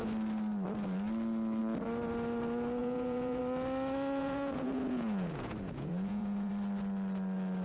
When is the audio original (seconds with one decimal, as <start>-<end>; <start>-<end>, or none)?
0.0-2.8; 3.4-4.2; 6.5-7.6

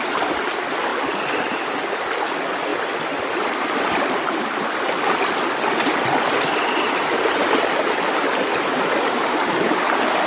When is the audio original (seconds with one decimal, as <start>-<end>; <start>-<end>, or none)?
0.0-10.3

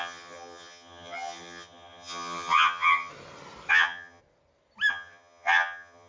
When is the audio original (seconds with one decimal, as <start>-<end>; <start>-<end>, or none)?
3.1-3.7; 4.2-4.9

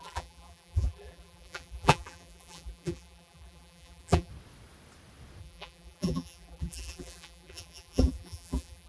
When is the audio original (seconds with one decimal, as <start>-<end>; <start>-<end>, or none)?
4.3-5.4

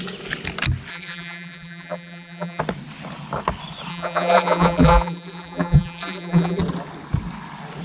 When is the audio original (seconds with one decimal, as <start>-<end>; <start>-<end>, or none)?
0.0-0.9; 2.6-3.9; 6.6-7.8

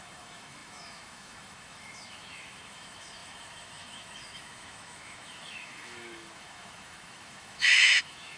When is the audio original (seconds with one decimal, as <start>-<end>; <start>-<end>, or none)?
none

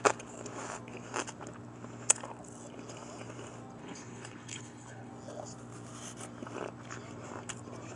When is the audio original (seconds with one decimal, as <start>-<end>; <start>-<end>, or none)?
0.0-3.8; 5.1-8.0

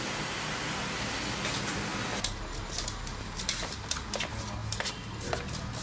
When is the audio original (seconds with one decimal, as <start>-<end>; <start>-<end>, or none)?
0.0-5.8